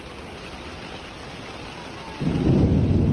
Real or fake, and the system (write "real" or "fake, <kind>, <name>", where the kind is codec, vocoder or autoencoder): real